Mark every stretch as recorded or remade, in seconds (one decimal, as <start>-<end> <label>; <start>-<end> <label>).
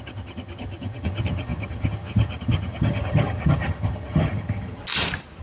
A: 0.0-4.8 remade; 4.8-5.4 recorded